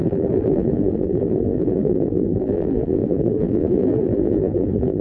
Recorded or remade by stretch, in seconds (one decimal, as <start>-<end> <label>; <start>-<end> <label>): 0.0-5.0 remade